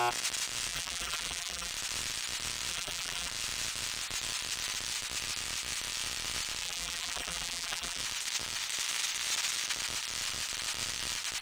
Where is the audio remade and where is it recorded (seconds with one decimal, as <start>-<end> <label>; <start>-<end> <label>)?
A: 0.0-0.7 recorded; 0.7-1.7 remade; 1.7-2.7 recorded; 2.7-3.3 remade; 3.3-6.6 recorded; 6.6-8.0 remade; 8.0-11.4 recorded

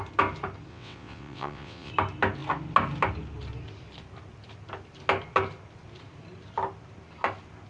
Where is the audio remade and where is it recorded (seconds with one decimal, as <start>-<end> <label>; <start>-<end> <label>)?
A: 0.0-0.7 recorded; 0.7-1.9 remade; 1.9-7.7 recorded

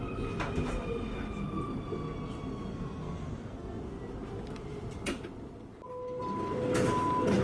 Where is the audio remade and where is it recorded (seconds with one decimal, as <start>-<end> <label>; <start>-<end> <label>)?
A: 0.0-2.7 recorded; 2.7-3.8 remade; 3.8-7.4 recorded

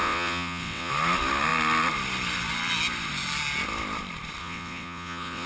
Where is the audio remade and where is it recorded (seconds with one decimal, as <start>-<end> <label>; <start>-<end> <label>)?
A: 0.0-0.9 remade; 0.9-4.4 recorded; 4.4-5.5 remade